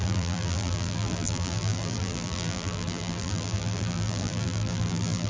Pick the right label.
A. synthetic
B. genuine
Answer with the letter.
A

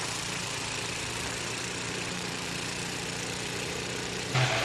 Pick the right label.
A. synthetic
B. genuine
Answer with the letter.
A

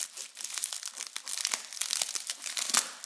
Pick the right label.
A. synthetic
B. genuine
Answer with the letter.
B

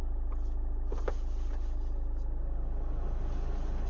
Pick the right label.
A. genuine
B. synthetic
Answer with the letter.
A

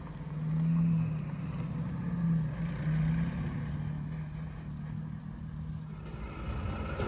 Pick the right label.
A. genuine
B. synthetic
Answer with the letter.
A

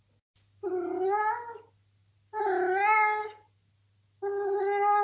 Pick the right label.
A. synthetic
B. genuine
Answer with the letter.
B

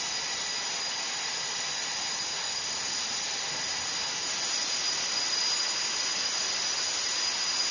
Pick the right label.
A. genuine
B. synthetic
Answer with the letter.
A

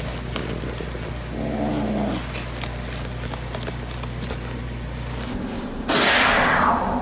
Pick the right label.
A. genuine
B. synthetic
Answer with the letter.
A